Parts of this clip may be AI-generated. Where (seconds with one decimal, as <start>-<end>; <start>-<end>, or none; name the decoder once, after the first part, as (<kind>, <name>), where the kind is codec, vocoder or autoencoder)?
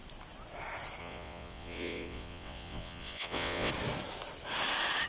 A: 1.0-3.7 (vocoder, WaveNeXt)